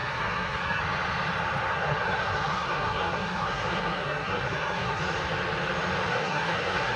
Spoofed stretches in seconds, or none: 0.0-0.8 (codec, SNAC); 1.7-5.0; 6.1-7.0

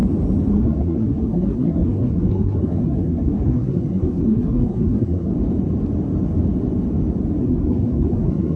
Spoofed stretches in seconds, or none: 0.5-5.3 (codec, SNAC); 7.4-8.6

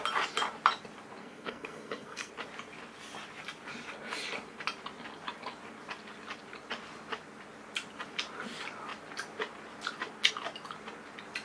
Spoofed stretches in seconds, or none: 1.2-2.3 (codec, SNAC)